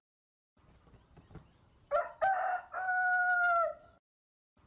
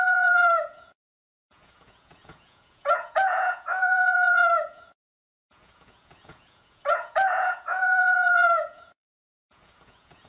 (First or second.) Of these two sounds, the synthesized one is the second